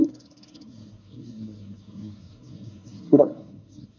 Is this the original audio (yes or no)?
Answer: no